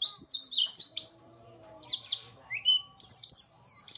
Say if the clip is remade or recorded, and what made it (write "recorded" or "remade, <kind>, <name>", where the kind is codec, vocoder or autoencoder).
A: remade, vocoder, BigVGAN v2